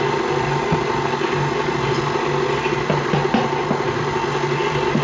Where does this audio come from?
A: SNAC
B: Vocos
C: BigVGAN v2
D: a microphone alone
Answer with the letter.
D